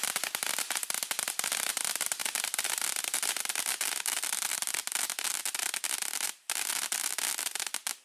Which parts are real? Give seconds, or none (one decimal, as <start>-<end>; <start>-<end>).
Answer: 0.0-2.2; 5.4-8.0